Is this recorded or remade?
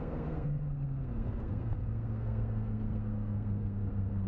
remade